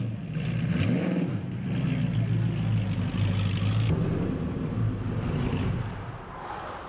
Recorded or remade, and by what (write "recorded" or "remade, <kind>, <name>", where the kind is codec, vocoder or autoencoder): recorded